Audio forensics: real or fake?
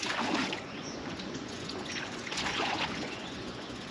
fake